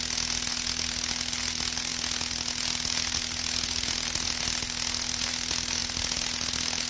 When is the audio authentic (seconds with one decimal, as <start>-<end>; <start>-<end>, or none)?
0.0-6.9